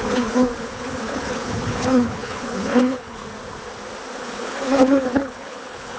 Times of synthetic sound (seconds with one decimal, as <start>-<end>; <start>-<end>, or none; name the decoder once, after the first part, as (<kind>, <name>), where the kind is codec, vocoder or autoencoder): 0.0-3.2 (codec, HILCodec); 4.2-6.0